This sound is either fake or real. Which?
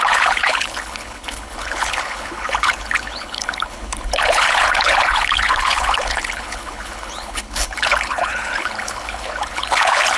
fake